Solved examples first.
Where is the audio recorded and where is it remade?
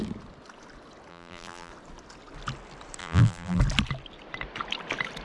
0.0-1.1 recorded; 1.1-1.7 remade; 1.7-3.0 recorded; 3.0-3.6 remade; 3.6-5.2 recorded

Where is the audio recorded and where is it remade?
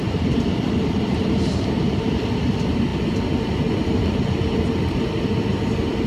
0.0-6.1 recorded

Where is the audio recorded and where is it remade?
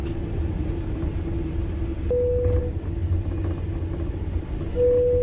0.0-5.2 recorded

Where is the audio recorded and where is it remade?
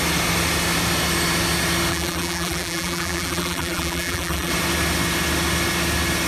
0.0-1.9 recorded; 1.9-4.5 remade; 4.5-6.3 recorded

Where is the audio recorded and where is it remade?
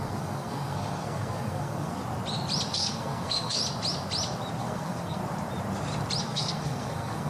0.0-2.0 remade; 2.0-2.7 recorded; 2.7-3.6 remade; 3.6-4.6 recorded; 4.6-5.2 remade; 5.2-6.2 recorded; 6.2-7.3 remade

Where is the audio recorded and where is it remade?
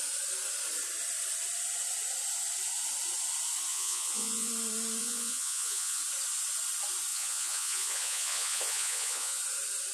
0.0-3.7 recorded; 3.7-4.5 remade; 4.5-5.0 recorded; 5.0-6.0 remade; 6.0-7.1 recorded; 7.1-9.4 remade; 9.4-9.9 recorded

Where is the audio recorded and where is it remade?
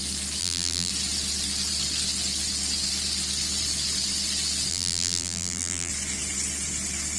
0.0-0.4 recorded; 0.4-0.9 remade; 0.9-4.7 recorded; 4.7-5.9 remade; 5.9-7.2 recorded